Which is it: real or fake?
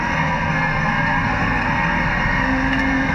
fake